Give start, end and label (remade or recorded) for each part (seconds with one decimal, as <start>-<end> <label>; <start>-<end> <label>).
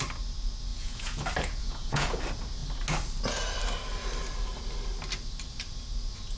0.0-0.7 recorded; 0.7-1.2 remade; 1.2-1.6 recorded; 1.6-2.2 remade; 2.2-6.4 recorded